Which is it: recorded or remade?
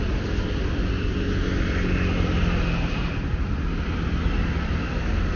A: recorded